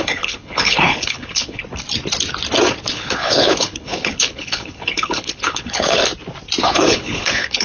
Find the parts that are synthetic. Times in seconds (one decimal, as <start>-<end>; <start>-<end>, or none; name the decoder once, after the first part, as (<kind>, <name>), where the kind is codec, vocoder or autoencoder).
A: 0.0-1.6 (codec, HILCodec); 2.9-6.0; 6.6-7.6